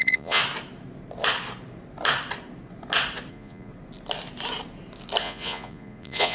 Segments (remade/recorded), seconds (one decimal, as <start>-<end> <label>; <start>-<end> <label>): 0.0-0.4 remade; 0.4-3.3 recorded; 3.3-3.7 remade; 3.7-5.2 recorded; 5.2-6.3 remade